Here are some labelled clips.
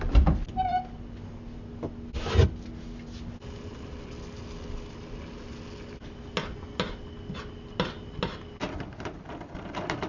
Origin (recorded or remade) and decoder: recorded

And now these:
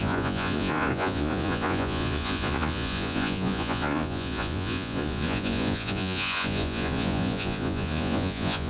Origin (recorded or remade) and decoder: remade, vocoder, Vocos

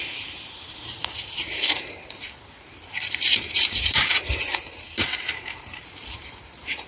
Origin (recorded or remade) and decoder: remade, vocoder, BigVGAN v2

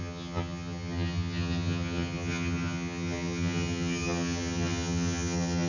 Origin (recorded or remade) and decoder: remade, vocoder, HiFi-GAN